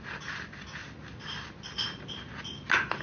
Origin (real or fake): real